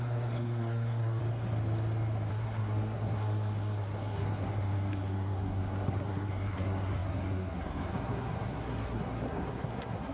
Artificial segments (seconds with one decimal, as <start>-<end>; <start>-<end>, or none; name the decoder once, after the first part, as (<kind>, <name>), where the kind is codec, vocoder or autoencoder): 0.0-1.2 (codec, SNAC); 2.3-10.1